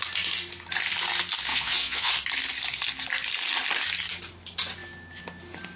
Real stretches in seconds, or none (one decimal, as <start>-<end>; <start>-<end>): 0.0-1.5; 2.1-5.8